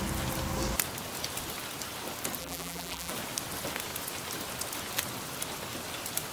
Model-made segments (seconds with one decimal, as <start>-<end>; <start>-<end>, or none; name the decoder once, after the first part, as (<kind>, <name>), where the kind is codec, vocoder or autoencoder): 2.4-3.1 (vocoder, BigVGAN v2)